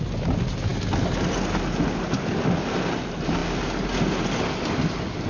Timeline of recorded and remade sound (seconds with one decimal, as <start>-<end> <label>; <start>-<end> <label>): 0.0-5.3 recorded